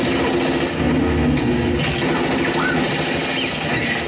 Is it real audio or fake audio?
real